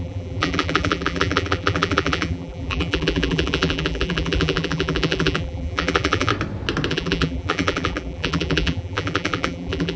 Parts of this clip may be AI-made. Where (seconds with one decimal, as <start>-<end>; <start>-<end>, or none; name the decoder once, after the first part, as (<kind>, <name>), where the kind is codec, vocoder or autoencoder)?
0.0-6.3 (vocoder, BigVGAN v2); 6.9-10.0